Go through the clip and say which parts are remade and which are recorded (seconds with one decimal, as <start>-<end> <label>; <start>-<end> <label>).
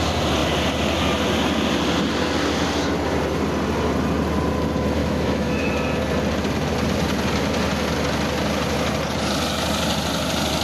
0.0-5.0 recorded; 5.0-5.7 remade; 5.7-10.6 recorded